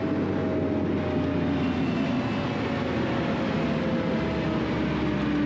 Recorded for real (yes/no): yes